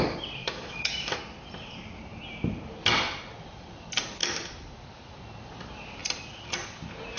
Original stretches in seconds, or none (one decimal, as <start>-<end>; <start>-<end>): 0.0-0.4; 1.2-7.2